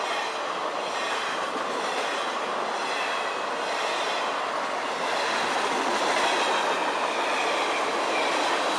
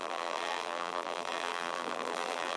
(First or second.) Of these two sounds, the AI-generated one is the second